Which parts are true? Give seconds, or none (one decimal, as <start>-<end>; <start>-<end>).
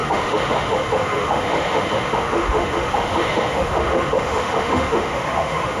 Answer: none